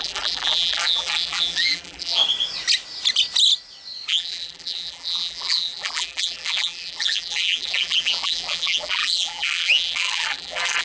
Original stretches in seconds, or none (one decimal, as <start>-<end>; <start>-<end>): 2.2-4.1